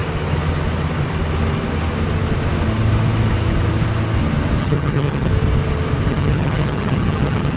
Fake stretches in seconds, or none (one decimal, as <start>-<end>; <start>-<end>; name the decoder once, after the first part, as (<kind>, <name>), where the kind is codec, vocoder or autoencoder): 4.6-5.3 (vocoder, HiFi-GAN); 6.1-7.6